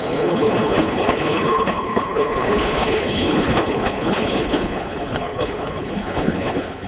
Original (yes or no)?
no